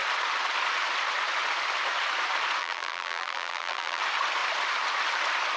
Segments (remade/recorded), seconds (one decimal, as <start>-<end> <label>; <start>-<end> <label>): 0.0-2.6 recorded; 2.6-4.0 remade; 4.0-5.6 recorded